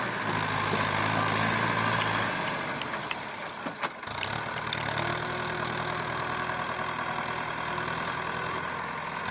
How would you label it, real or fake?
real